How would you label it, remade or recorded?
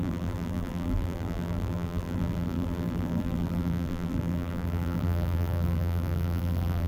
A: remade